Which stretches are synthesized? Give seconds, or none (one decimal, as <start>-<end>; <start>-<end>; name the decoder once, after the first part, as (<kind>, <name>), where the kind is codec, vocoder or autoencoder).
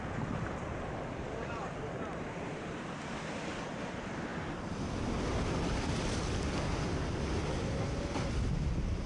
none